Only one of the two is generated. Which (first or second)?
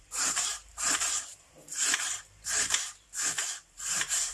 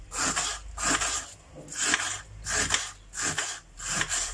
first